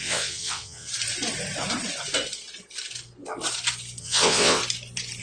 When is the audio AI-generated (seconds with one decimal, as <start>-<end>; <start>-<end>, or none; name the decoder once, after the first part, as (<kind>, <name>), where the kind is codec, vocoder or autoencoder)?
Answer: 0.0-0.9 (vocoder, WaveNeXt); 4.0-4.6